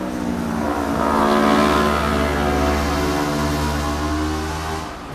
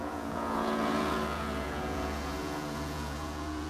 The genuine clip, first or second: first